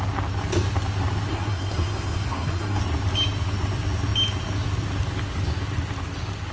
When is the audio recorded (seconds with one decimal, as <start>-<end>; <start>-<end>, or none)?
0.0-1.3; 2.8-6.5

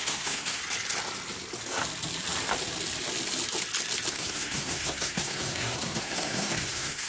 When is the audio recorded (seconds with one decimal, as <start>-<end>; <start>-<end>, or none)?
0.6-4.1

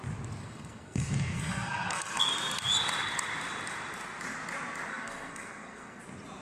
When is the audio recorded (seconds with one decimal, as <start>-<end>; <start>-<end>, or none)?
0.0-0.4; 2.3-4.9; 6.0-6.4

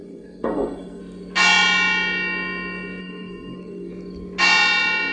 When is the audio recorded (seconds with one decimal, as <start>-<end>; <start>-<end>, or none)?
1.0-3.0; 3.9-5.1

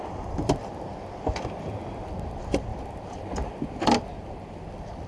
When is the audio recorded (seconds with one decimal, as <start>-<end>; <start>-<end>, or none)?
0.0-5.1

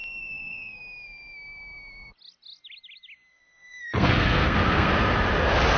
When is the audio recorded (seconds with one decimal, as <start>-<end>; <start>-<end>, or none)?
0.8-3.3; 4.9-5.8

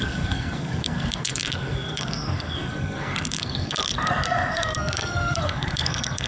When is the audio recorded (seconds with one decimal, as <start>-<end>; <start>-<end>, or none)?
none

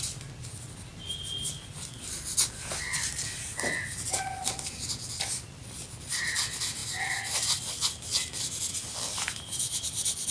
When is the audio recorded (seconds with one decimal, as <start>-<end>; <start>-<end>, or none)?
0.0-10.3